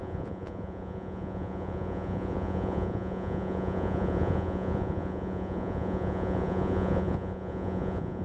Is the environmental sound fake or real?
fake